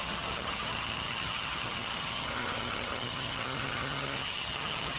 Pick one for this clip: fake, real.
fake